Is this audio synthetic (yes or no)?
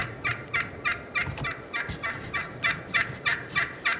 no